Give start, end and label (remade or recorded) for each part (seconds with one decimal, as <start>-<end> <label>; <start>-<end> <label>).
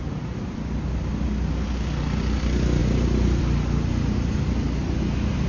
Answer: 0.0-2.8 recorded; 2.8-3.4 remade; 3.4-5.5 recorded